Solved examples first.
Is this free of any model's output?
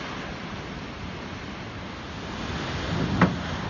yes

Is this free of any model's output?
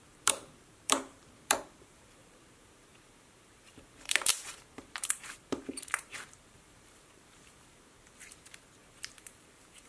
no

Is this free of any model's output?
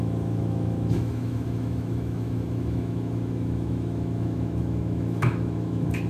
no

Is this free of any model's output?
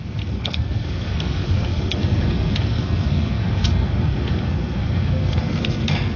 no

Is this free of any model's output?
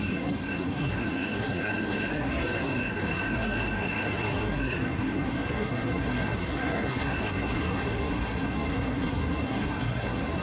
no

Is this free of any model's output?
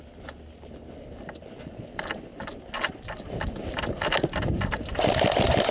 yes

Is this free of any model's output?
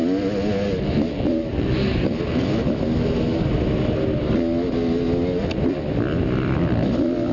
yes